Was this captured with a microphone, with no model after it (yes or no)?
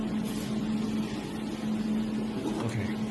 yes